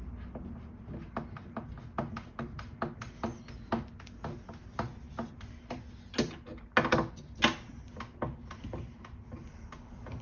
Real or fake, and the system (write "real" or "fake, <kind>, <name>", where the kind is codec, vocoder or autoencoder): real